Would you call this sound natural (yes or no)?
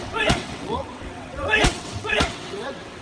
no